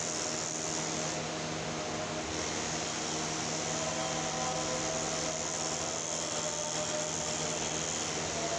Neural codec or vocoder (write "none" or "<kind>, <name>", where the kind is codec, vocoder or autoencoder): none